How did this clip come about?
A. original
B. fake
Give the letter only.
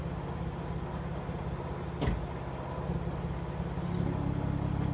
A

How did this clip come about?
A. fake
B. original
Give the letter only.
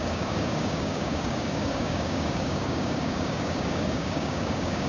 A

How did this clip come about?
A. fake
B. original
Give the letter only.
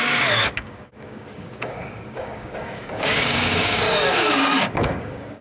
A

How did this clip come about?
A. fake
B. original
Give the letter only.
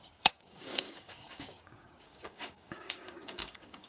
A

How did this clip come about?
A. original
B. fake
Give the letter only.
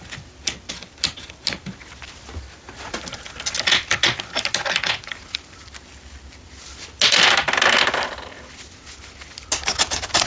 A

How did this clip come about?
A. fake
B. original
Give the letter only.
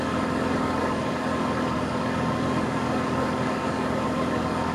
A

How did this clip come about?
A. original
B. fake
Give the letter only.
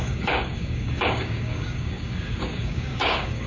B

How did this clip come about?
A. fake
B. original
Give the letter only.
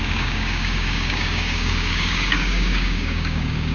A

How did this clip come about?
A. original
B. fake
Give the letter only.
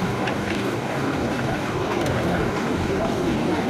B